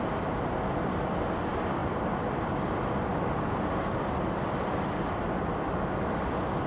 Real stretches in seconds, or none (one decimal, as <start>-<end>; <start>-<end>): 0.0-6.7